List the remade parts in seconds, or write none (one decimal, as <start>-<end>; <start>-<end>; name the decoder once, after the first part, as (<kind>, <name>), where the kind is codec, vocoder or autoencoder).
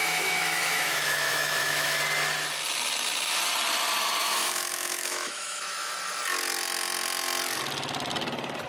0.0-2.0 (autoencoder, DAC-VAE); 4.2-5.9